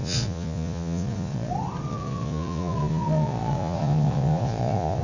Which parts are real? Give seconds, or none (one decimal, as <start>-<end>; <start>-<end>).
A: 1.5-1.9